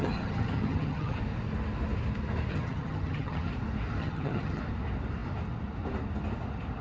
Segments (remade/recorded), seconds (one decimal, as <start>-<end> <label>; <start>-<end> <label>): 0.0-1.2 remade; 1.2-2.5 recorded; 2.5-3.5 remade; 3.5-4.0 recorded; 4.0-4.6 remade; 4.6-6.8 recorded